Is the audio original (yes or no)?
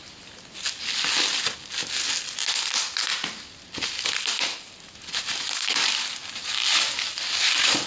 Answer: yes